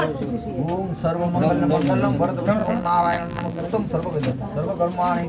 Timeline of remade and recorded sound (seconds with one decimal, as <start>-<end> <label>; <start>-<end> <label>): 0.0-2.6 recorded; 2.6-3.6 remade; 3.6-5.3 recorded